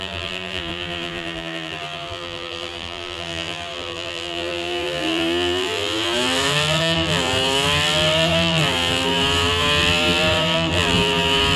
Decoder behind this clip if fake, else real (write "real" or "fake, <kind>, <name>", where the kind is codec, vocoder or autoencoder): fake, vocoder, BigVGAN v2